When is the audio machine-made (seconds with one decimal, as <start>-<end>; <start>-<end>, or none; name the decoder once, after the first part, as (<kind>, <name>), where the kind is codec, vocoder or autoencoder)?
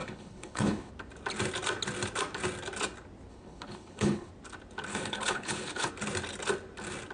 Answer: 0.0-0.9 (codec, HILCodec); 3.3-4.3; 4.9-5.9